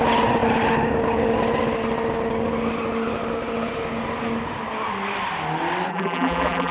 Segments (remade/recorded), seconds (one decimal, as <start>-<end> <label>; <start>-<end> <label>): 0.0-5.9 recorded; 5.9-6.7 remade